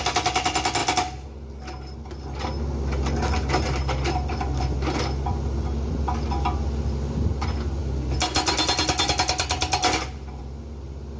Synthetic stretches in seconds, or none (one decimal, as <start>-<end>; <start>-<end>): none